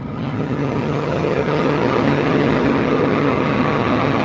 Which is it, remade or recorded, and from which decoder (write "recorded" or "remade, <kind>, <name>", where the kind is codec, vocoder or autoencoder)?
remade, vocoder, HiFi-GAN